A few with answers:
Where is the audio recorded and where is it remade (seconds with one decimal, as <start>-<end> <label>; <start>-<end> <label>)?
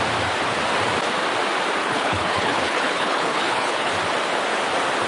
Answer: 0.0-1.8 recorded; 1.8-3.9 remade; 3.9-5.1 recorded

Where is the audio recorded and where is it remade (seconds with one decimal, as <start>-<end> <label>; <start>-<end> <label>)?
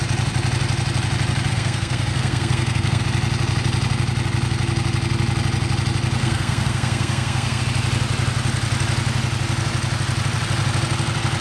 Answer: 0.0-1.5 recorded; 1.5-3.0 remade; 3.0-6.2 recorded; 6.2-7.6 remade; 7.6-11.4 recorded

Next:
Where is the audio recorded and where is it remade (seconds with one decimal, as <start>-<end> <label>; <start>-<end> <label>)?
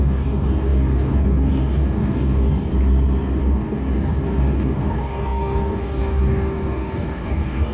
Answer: 0.0-2.7 remade; 2.7-3.4 recorded; 3.4-7.7 remade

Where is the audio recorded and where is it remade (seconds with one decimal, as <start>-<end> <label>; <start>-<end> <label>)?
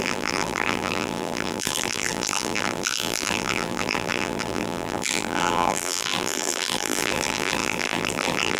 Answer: 0.0-8.6 remade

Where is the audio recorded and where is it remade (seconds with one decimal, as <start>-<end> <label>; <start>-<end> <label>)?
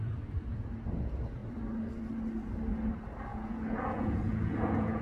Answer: 0.0-3.3 recorded; 3.3-5.0 remade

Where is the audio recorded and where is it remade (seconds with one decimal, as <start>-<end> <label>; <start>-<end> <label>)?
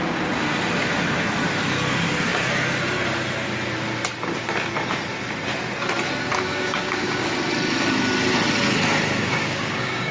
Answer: 0.0-6.5 recorded; 6.5-7.3 remade; 7.3-9.2 recorded; 9.2-10.1 remade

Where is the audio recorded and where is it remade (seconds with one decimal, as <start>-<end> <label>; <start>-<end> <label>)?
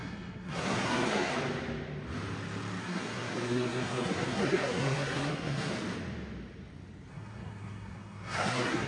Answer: 0.0-1.3 remade; 1.3-2.8 recorded; 2.8-5.7 remade; 5.7-7.1 recorded; 7.1-8.9 remade